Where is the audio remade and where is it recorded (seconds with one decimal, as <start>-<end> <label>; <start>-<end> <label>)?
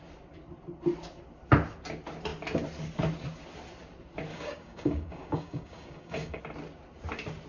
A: 0.0-4.3 recorded; 4.3-6.4 remade; 6.4-7.5 recorded